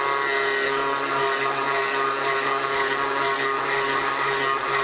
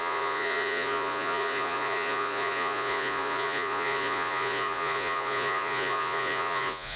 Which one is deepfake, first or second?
second